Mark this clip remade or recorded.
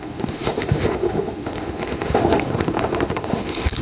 remade